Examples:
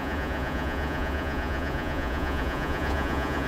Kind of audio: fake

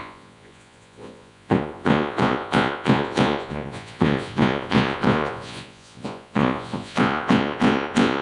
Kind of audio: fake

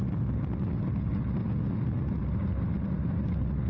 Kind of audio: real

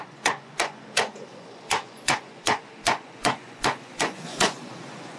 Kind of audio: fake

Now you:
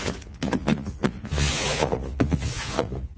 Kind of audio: fake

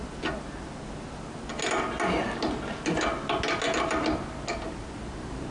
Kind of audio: real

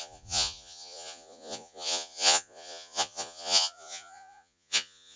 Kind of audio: fake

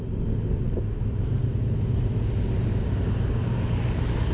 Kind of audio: real